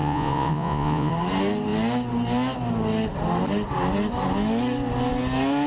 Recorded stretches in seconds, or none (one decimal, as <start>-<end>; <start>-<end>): 1.1-5.7